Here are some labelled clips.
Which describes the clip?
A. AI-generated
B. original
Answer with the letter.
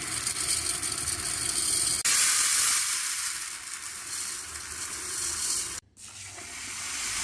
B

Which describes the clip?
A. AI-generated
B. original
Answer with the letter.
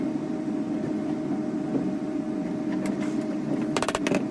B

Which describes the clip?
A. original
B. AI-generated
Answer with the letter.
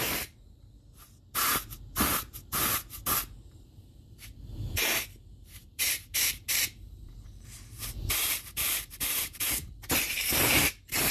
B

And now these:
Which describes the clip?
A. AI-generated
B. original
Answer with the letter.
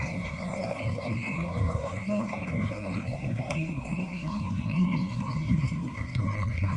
A